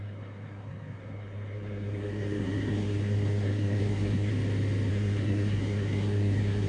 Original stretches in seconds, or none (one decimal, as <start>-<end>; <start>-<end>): 4.3-4.9